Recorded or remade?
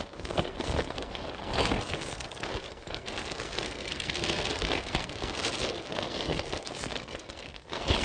remade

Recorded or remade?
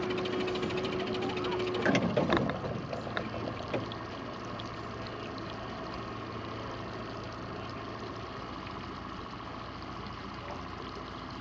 recorded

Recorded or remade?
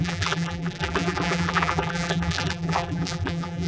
remade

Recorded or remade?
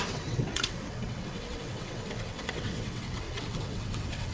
remade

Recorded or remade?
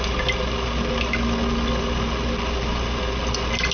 recorded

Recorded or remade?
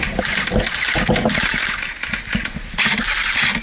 recorded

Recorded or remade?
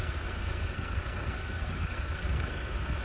remade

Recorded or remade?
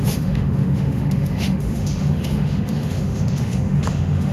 remade